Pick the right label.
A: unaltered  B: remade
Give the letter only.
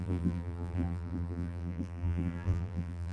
B